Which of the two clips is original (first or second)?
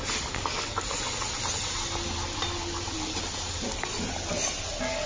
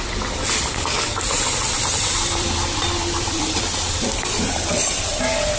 first